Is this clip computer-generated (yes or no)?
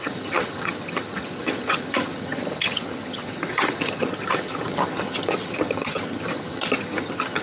yes